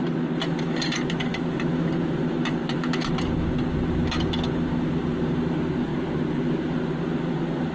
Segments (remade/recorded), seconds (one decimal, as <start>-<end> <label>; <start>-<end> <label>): 0.0-7.7 recorded